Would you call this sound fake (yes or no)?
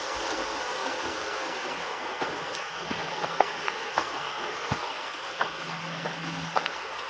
yes